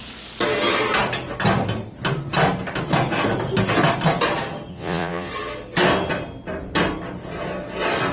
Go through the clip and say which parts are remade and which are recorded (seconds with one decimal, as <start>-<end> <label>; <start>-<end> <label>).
0.0-4.7 recorded; 4.7-5.3 remade; 5.3-8.1 recorded